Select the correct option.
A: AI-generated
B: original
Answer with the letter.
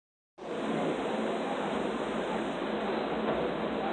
B